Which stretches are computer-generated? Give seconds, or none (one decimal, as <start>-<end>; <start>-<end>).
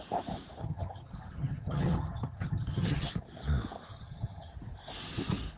0.6-3.1; 3.9-4.5